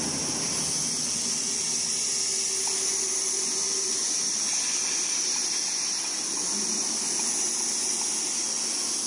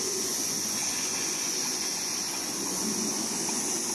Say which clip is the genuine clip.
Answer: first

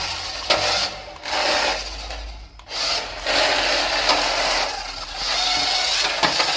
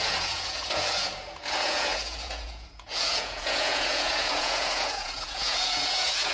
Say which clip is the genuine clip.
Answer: first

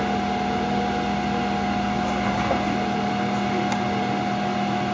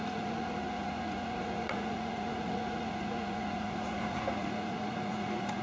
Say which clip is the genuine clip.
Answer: first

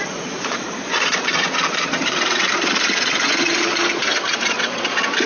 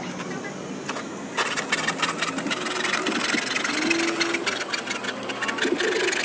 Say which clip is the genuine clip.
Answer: second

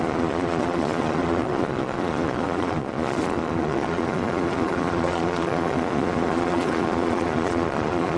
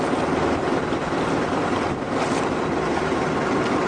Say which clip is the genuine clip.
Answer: second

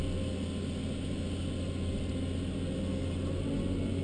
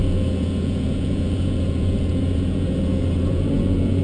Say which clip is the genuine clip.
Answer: first